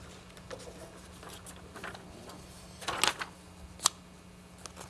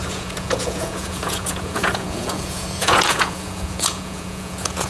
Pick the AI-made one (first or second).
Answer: second